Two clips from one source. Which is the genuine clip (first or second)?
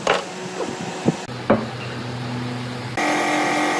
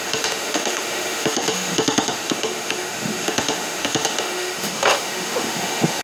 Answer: first